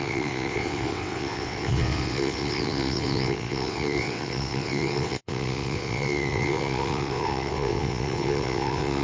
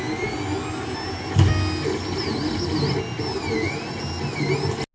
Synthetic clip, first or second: first